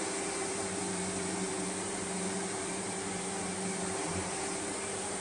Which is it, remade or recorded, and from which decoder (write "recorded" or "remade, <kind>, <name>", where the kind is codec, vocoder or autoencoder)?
remade, vocoder, BigVGAN v2